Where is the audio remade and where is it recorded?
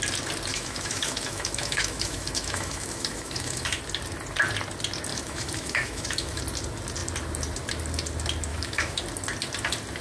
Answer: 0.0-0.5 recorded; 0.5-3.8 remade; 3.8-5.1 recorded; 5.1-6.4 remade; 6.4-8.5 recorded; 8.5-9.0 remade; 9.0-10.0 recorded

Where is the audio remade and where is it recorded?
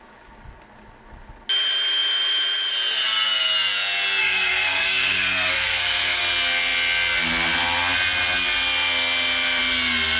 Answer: 0.0-4.2 recorded; 4.2-6.2 remade; 6.2-10.2 recorded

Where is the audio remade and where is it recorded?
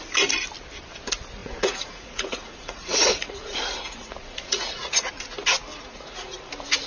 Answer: 0.0-1.4 recorded; 1.4-5.1 remade; 5.1-5.7 recorded; 5.7-6.5 remade; 6.5-6.9 recorded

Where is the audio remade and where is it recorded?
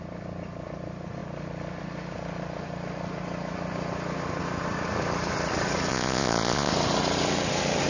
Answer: 0.0-5.9 recorded; 5.9-6.7 remade; 6.7-7.9 recorded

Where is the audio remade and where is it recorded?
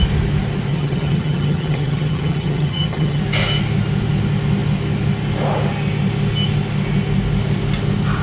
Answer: 0.0-0.7 recorded; 0.7-3.2 remade; 3.2-8.2 recorded